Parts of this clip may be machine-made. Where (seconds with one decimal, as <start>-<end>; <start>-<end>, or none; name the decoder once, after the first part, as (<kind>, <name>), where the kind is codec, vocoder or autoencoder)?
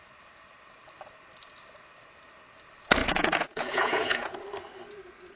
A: 3.0-4.4 (vocoder, Vocos)